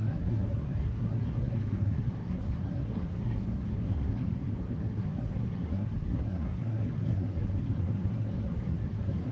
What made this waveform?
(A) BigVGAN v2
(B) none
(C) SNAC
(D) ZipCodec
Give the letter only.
C